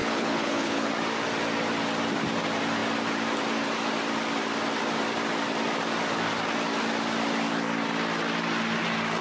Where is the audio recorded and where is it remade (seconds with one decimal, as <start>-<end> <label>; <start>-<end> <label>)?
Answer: 0.0-0.9 remade; 0.9-9.2 recorded